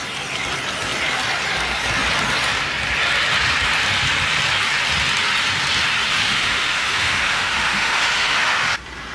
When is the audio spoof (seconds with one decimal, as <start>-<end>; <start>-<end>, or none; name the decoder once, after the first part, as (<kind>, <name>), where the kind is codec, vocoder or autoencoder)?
6.1-8.7 (autoencoder, DAC-VAE)